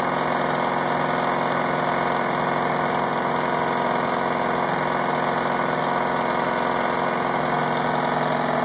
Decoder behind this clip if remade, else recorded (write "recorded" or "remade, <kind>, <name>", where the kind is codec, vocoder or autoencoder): recorded